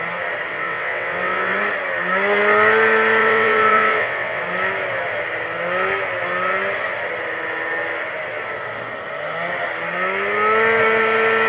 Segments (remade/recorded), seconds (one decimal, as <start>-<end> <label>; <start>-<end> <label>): 0.0-0.5 recorded; 0.5-1.6 remade; 1.6-3.2 recorded; 3.2-4.4 remade; 4.4-11.5 recorded

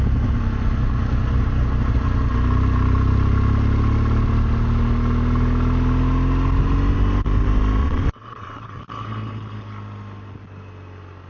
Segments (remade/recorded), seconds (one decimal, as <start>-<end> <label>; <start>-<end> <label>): 0.0-7.8 recorded; 7.8-8.8 remade; 8.8-11.3 recorded

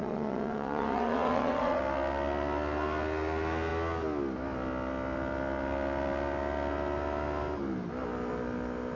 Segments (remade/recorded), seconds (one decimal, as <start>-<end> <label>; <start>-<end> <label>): 0.0-1.8 remade; 1.8-9.0 recorded

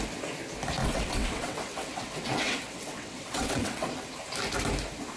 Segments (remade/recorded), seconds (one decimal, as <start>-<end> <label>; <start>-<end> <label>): 0.0-0.8 recorded; 0.8-3.9 remade; 3.9-5.2 recorded

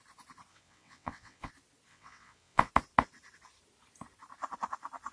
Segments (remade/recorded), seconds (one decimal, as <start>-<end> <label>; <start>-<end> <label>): 0.0-0.5 recorded; 0.5-1.5 remade; 1.5-1.9 recorded; 1.9-2.7 remade; 2.7-5.1 recorded

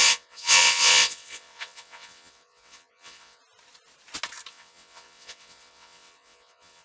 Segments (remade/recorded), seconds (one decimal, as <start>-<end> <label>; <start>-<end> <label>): 0.0-3.4 remade; 3.4-4.5 recorded; 4.5-6.8 remade

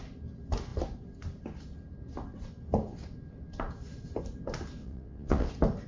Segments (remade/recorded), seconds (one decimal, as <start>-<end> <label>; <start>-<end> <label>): 0.0-4.8 recorded; 4.8-5.5 remade; 5.5-5.9 recorded